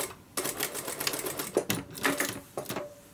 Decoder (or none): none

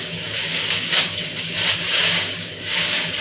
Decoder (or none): codec, DAC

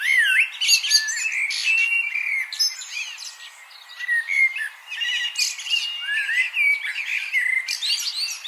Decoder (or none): none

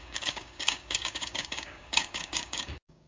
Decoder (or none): codec, DAC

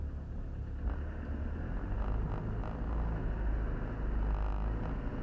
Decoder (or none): none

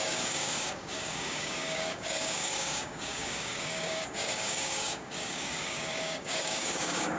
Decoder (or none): codec, DAC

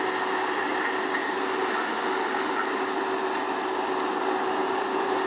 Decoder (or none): none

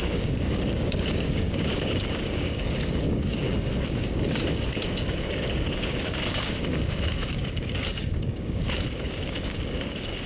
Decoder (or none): codec, DAC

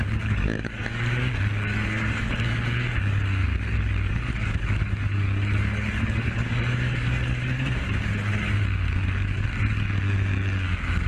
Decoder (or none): codec, DAC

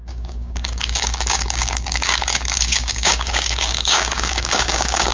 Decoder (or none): codec, DAC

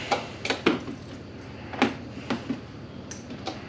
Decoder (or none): none